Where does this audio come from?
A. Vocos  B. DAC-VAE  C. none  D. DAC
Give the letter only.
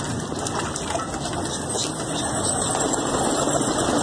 C